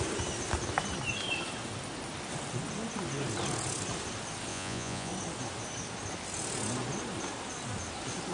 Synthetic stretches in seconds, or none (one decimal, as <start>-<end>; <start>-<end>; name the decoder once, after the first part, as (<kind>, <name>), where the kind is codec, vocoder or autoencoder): 4.5-5.1 (vocoder, Vocos)